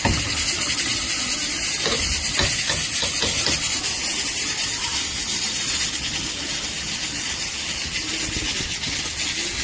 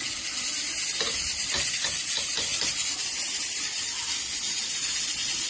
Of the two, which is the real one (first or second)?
first